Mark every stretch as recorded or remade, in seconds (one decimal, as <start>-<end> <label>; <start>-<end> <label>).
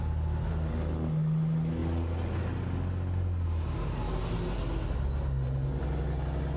0.0-6.6 recorded